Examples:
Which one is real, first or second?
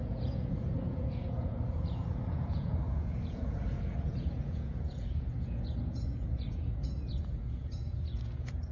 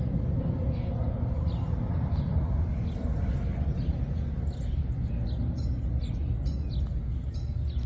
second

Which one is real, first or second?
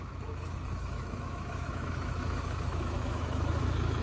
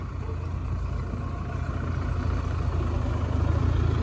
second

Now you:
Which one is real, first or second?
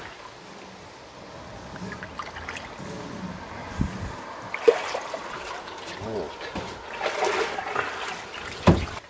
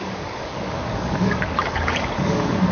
first